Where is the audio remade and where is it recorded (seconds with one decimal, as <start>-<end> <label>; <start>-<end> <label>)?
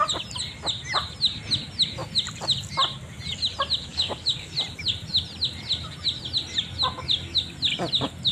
0.0-3.9 recorded; 3.9-4.5 remade; 4.5-8.3 recorded